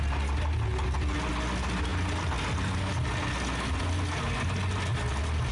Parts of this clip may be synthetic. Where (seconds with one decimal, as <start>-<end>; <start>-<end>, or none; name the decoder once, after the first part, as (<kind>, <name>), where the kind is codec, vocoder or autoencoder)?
none